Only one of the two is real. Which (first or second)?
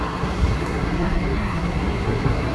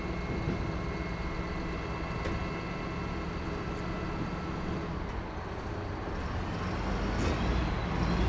second